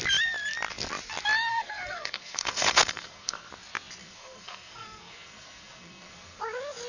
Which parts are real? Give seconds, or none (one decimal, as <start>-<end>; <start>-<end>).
0.0-1.5; 3.5-4.0; 6.4-6.9